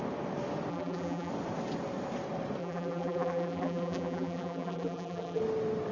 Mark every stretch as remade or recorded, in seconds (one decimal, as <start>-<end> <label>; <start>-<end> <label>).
0.0-0.7 recorded; 0.7-1.3 remade; 1.3-2.6 recorded; 2.6-5.4 remade; 5.4-5.9 recorded